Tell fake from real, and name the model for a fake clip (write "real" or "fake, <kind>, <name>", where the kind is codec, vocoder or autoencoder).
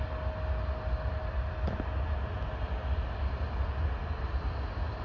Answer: real